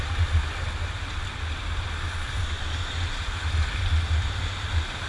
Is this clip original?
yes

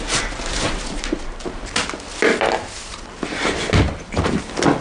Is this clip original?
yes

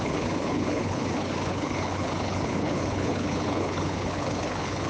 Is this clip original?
no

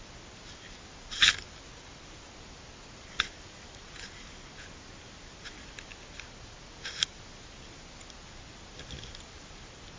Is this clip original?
yes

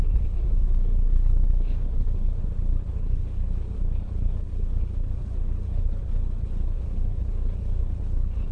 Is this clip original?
no